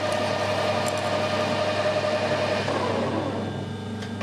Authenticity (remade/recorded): recorded